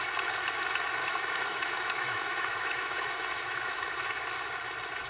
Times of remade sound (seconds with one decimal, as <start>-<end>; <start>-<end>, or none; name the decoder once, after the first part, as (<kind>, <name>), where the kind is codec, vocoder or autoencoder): 1.0-4.1 (autoencoder, DAC-VAE)